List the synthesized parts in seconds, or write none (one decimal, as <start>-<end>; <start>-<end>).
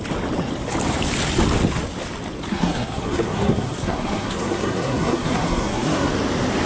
2.5-6.1